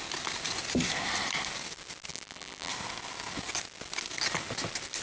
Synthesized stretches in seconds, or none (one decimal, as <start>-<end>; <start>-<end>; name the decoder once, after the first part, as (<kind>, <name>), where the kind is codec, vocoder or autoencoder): 2.1-2.7 (vocoder, BigVGAN v2)